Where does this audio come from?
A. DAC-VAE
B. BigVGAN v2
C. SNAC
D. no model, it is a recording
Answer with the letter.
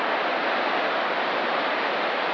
D